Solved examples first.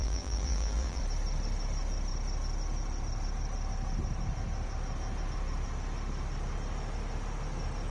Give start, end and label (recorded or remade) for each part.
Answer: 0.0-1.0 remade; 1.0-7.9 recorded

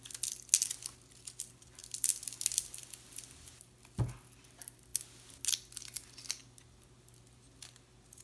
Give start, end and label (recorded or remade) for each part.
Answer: 0.0-8.2 recorded

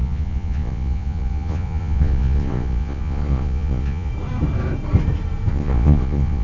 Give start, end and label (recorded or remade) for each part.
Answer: 0.0-4.1 remade; 4.1-5.5 recorded; 5.5-6.4 remade

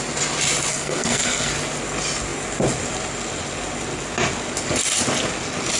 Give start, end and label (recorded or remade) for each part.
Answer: 0.0-0.7 recorded; 0.7-1.5 remade; 1.5-5.8 recorded

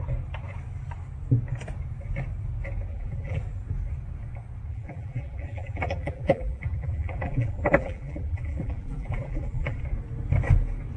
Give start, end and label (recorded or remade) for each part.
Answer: 0.0-2.9 recorded; 2.9-3.4 remade; 3.4-4.7 recorded; 4.7-9.8 remade; 9.8-11.0 recorded

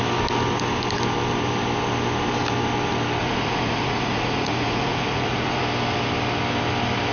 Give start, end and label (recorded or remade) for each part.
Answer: 0.0-3.2 recorded; 3.2-5.6 remade; 5.6-7.1 recorded